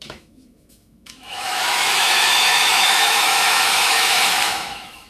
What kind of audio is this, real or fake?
fake